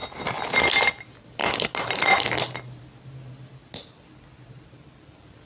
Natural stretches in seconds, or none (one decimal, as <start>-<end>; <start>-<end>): 0.0-5.5